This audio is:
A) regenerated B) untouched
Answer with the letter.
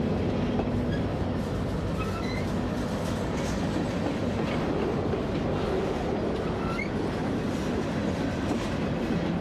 B